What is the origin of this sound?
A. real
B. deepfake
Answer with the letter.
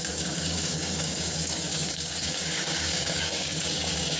B